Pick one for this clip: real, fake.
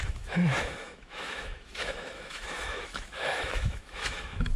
fake